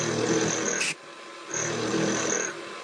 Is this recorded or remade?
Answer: recorded